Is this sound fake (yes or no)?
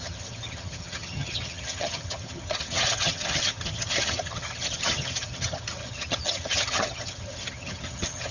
yes